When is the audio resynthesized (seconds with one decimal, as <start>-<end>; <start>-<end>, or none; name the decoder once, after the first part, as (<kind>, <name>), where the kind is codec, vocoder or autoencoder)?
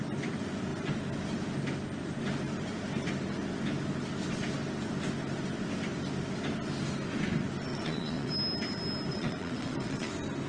7.7-8.3 (vocoder, WaveNeXt); 9.1-10.1